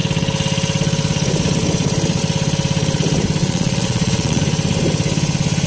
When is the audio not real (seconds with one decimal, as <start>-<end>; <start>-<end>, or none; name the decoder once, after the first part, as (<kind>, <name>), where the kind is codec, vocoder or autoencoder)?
3.4-4.4 (vocoder, Vocos)